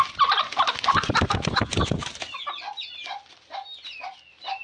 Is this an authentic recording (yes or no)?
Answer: yes